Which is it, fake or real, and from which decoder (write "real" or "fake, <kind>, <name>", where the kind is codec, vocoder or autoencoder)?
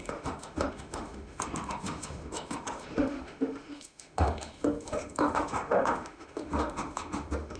fake, autoencoder, DAC-VAE